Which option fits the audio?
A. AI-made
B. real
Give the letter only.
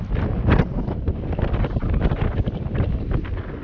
B